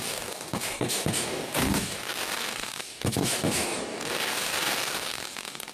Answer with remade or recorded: remade